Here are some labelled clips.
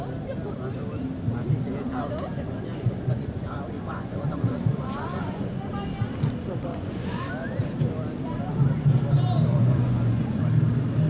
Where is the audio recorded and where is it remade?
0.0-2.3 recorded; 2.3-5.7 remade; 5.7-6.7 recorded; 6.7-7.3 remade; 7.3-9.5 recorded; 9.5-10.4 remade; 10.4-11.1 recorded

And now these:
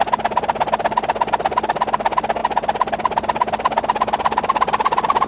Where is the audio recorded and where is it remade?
0.0-5.3 recorded

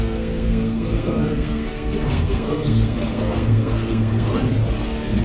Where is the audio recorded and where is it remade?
0.0-4.3 remade; 4.3-5.2 recorded

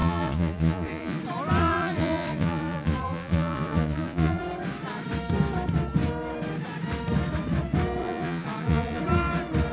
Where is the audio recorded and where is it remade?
0.0-1.2 remade; 1.2-1.6 recorded; 1.6-4.4 remade; 4.4-8.0 recorded; 8.0-9.0 remade; 9.0-9.7 recorded

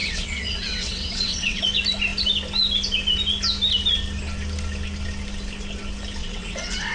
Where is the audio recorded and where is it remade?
0.0-1.6 remade; 1.6-6.2 recorded; 6.2-6.9 remade